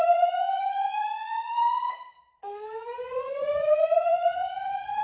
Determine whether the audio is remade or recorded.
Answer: remade